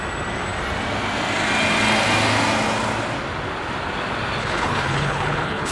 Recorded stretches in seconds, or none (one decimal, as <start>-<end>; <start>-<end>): 0.0-4.4